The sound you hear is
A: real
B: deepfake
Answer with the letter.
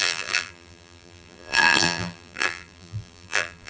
B